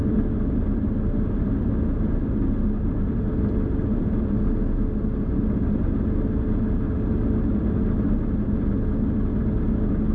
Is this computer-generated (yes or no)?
no